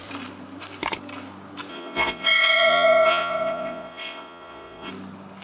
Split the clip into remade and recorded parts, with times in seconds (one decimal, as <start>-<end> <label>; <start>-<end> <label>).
0.0-1.7 recorded; 1.7-4.9 remade; 4.9-5.4 recorded